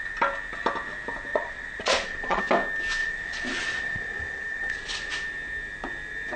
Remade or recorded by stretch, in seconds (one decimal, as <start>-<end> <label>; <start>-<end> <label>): 0.0-1.3 recorded; 1.3-2.4 remade; 2.4-3.0 recorded; 3.0-5.1 remade; 5.1-6.4 recorded